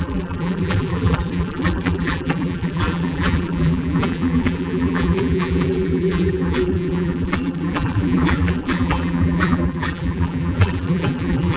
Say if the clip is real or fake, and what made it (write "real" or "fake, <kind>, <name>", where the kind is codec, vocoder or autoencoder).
fake, vocoder, BigVGAN v2